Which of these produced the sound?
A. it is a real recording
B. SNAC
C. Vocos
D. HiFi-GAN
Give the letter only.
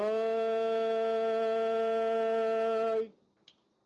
A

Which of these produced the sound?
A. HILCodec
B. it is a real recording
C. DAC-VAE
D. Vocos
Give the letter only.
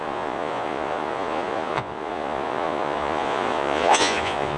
D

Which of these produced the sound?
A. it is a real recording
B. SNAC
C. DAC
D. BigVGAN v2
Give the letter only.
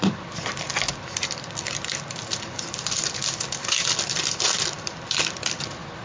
D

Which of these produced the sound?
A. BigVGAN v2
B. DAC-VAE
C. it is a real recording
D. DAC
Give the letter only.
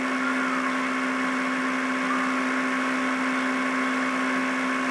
C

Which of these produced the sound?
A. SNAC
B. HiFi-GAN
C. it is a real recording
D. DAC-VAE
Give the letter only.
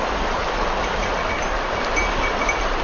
C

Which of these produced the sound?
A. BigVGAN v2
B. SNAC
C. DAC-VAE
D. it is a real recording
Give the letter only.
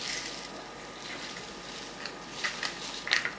D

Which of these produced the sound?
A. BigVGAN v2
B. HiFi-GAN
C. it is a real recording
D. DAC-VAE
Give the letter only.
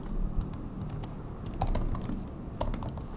C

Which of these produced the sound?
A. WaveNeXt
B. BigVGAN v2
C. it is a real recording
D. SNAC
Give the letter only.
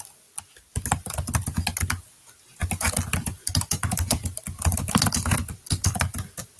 C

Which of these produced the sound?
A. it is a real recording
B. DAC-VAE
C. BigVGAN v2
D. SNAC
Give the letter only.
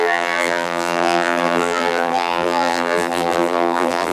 C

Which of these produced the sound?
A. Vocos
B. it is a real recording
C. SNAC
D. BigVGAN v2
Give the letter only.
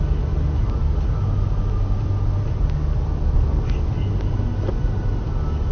B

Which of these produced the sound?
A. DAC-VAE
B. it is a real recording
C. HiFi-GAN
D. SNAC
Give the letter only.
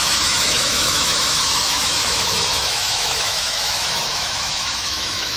A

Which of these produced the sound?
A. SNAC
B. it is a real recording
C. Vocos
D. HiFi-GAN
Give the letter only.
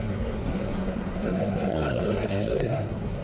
A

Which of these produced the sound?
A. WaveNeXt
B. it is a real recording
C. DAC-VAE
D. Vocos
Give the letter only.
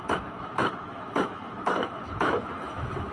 C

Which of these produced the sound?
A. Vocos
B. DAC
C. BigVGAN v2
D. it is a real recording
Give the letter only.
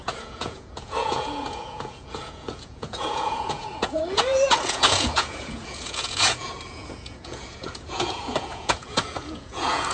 A